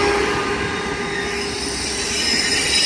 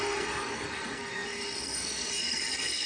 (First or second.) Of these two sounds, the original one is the first